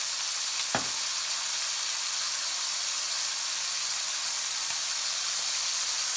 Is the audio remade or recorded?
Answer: recorded